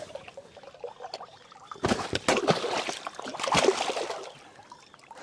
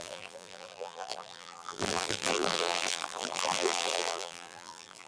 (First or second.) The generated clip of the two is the second